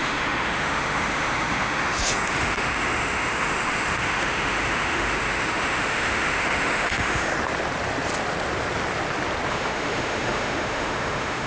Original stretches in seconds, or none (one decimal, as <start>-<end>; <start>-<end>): 7.3-9.5